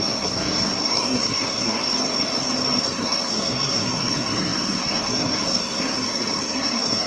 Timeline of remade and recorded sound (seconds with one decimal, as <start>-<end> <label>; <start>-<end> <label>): 0.0-1.8 remade; 1.8-2.8 recorded; 2.8-7.1 remade